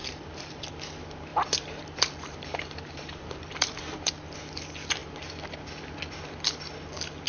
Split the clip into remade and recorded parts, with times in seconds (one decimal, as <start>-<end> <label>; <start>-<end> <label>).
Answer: 0.0-0.6 remade; 0.6-1.3 recorded; 1.3-4.1 remade; 4.1-7.3 recorded